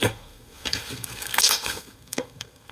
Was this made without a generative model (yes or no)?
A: no